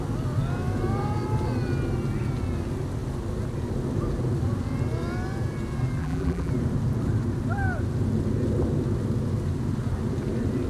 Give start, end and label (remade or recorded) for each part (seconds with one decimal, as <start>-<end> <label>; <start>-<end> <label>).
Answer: 0.0-6.0 recorded; 6.0-6.5 remade; 6.5-10.7 recorded